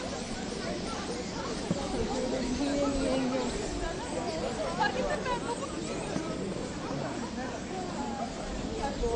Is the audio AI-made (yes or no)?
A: no